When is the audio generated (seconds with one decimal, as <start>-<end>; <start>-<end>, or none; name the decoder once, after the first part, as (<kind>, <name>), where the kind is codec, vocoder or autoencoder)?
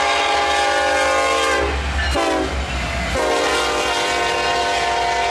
none